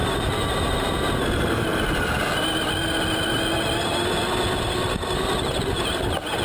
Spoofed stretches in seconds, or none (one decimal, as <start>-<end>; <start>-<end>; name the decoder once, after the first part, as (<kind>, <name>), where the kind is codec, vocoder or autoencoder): 0.0-1.1 (vocoder, BigVGAN v2)